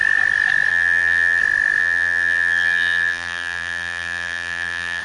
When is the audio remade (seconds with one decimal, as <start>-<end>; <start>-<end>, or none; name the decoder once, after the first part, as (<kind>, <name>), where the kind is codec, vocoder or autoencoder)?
0.7-1.4 (vocoder, BigVGAN v2); 1.8-5.0